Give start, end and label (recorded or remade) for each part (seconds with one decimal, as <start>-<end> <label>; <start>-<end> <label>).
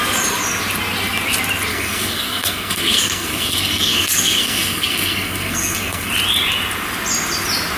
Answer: 0.0-1.7 recorded; 1.7-6.1 remade; 6.1-7.8 recorded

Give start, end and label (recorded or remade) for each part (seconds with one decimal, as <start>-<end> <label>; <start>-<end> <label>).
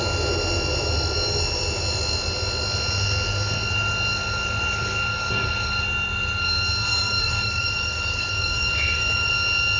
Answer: 0.0-6.9 recorded; 6.9-9.3 remade; 9.3-9.8 recorded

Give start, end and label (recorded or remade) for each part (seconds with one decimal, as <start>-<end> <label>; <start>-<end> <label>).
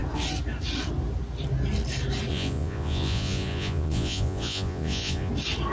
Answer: 0.0-2.3 recorded; 2.3-5.3 remade; 5.3-5.7 recorded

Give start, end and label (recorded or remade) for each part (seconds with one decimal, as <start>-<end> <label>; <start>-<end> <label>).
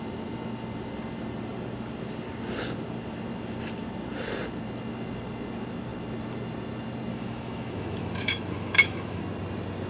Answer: 0.0-7.1 recorded; 7.1-9.2 remade; 9.2-9.9 recorded